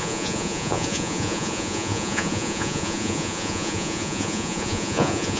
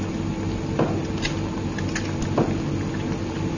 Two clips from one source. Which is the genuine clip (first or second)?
second